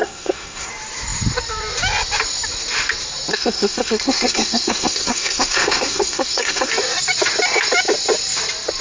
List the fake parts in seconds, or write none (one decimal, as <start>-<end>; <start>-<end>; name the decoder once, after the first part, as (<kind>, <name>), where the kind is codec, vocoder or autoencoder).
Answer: 0.0-0.7 (codec, SNAC); 3.3-6.7

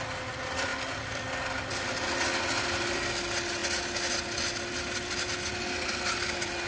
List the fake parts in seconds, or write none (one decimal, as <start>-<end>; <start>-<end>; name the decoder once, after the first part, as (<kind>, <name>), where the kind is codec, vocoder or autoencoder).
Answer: none

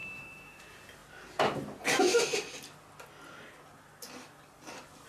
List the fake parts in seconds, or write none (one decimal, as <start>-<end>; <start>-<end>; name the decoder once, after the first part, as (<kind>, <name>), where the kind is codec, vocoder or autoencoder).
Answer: 0.0-0.6 (autoencoder, DAC-VAE)

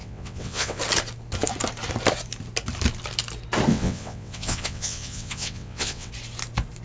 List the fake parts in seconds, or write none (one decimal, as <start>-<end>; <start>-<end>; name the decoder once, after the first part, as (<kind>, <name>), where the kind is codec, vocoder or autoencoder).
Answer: 0.0-0.8 (vocoder, WaveNeXt); 3.7-6.1